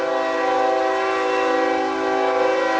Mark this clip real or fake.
real